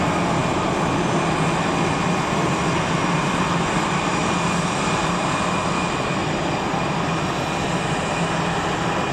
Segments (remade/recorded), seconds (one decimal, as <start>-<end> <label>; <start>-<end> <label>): 0.0-6.2 recorded; 6.2-6.9 remade; 6.9-9.1 recorded